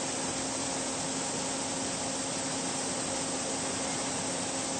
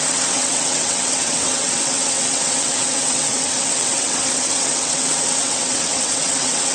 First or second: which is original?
first